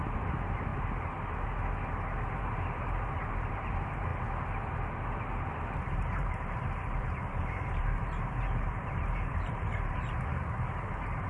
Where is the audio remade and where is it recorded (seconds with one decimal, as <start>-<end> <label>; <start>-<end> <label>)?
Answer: 0.0-0.7 remade; 0.7-2.3 recorded; 2.3-4.1 remade; 4.1-5.8 recorded; 5.8-11.3 remade